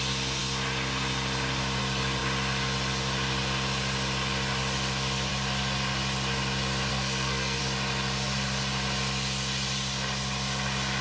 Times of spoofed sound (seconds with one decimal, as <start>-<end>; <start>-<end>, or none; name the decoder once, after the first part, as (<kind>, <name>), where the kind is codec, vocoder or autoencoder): 6.9-7.6 (codec, SNAC)